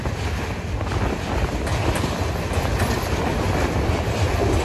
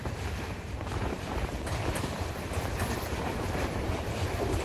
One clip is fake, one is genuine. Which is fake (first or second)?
second